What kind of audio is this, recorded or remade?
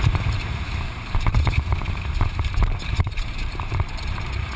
remade